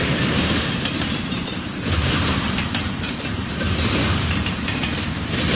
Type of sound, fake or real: fake